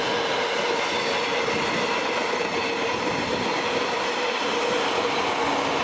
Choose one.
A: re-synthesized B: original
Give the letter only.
B